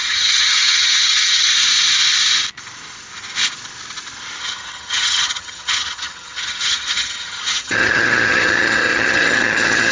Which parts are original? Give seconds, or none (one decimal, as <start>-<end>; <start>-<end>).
1.5-4.4